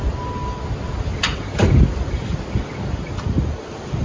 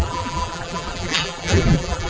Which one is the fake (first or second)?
second